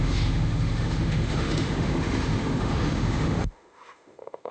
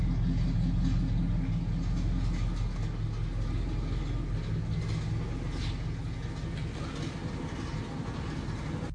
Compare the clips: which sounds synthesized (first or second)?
first